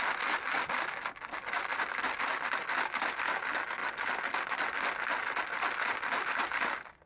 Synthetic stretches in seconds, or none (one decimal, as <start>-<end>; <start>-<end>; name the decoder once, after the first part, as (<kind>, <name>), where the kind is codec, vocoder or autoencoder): none